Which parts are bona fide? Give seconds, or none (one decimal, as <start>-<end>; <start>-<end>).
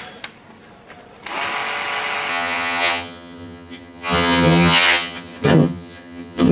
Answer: 0.0-2.3